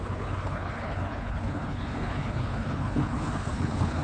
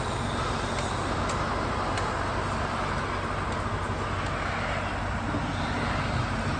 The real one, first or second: second